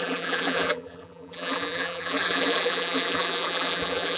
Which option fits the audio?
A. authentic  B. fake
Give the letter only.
B